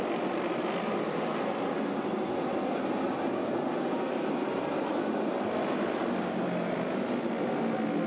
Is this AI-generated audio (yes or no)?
no